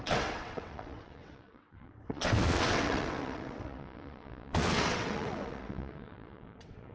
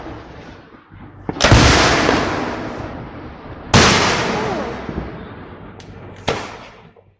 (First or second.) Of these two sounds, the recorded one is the second